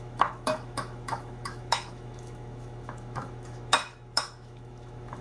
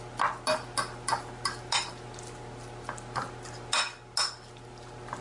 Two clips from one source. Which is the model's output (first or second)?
first